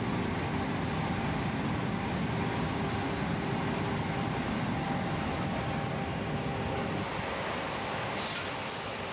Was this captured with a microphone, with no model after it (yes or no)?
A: yes